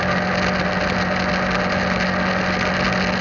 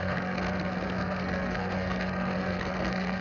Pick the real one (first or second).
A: first